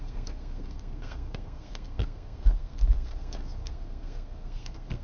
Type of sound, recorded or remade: remade